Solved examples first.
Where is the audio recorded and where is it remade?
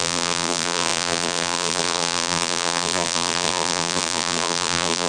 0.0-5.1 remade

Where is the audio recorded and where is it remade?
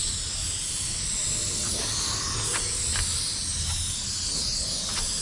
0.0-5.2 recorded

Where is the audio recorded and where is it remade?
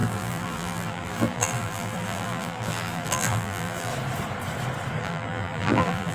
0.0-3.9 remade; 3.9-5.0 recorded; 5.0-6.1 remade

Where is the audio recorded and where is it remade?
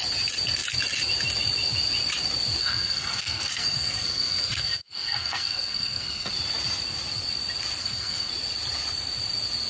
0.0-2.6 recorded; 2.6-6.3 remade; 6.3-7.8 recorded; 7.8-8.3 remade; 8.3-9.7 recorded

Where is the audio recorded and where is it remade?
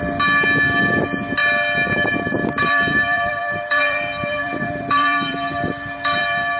0.0-2.6 recorded; 2.6-6.6 remade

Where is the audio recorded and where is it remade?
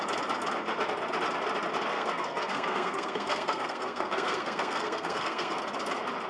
0.0-1.9 recorded; 1.9-5.6 remade; 5.6-6.3 recorded